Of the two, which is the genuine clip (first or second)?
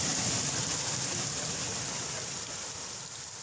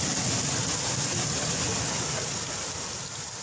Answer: second